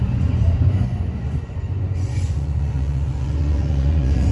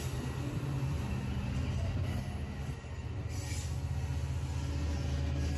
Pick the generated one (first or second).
first